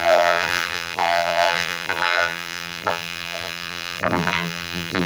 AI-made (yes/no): yes